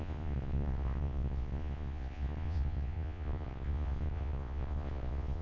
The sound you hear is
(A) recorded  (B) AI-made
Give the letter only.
B